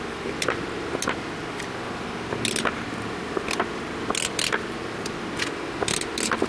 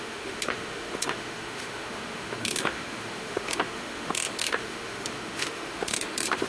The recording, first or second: first